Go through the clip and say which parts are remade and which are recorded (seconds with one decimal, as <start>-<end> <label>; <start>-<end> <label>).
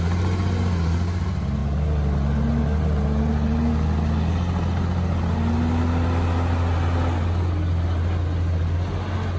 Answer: 0.0-9.4 recorded